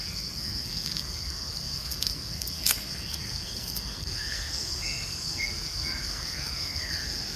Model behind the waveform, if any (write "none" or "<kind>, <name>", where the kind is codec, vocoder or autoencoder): codec, SNAC